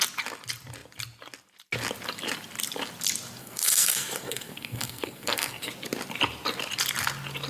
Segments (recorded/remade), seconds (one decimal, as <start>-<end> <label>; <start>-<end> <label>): 0.0-3.4 recorded; 3.4-5.7 remade; 5.7-7.5 recorded